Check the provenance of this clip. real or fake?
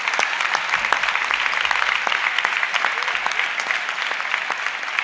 real